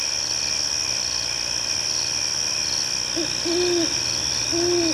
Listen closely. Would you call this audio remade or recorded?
recorded